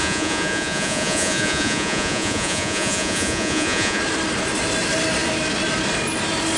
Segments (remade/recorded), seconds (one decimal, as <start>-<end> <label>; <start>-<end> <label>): 0.0-4.0 remade; 4.0-6.6 recorded